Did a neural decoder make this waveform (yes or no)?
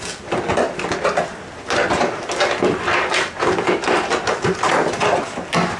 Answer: no